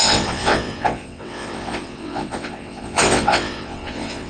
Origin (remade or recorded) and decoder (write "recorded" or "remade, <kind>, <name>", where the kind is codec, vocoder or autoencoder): remade, vocoder, WaveNeXt